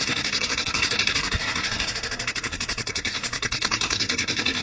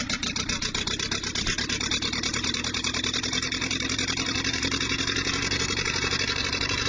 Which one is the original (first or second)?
second